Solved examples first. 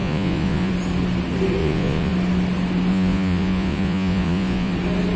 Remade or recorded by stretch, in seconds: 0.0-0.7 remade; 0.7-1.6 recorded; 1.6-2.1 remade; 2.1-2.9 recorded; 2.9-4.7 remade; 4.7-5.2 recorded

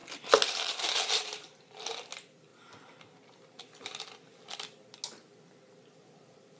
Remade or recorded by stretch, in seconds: 0.0-6.6 recorded

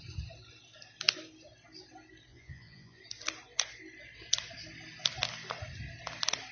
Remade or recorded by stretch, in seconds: 0.0-2.3 recorded; 2.3-3.0 remade; 3.0-6.5 recorded

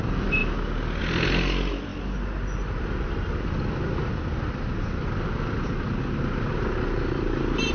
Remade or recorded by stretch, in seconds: 0.0-7.7 recorded